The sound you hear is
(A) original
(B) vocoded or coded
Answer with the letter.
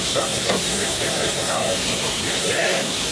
B